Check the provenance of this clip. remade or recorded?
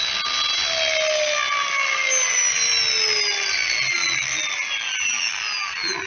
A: recorded